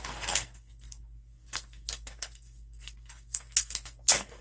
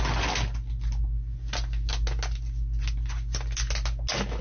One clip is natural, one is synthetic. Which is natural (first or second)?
second